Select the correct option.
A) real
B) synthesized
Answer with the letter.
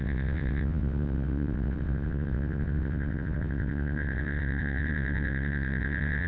B